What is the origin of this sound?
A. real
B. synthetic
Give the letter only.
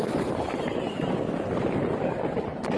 A